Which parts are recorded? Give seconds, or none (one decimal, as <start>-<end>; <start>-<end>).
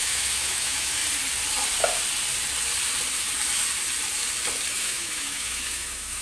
1.0-4.7